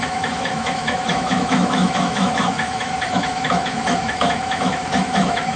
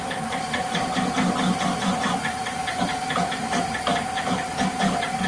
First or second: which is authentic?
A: second